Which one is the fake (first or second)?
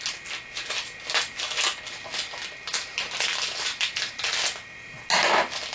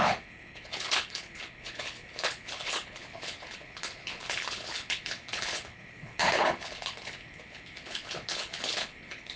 second